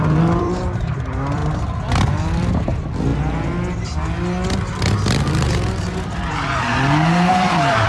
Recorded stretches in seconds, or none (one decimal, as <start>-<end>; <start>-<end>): 1.4-2.1; 3.1-7.3